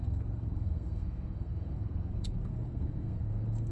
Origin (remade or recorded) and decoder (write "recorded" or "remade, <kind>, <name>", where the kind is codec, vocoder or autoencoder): remade, codec, SNAC